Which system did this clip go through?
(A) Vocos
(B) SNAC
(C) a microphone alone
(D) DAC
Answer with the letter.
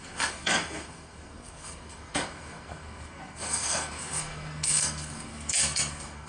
B